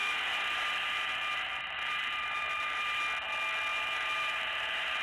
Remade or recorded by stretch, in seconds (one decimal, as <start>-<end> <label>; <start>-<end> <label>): 0.0-3.0 remade; 3.0-3.7 recorded; 3.7-5.0 remade